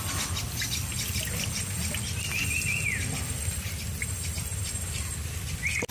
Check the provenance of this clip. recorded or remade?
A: recorded